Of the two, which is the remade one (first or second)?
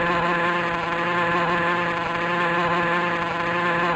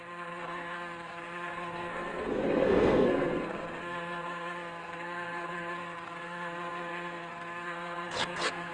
second